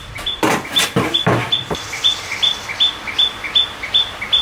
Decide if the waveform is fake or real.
fake